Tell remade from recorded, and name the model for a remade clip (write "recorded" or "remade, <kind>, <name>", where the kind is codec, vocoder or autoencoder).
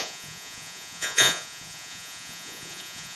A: remade, vocoder, Vocos